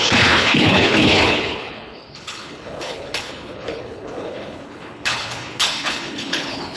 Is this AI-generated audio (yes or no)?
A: yes